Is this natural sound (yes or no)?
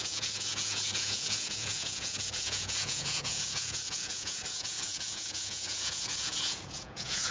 no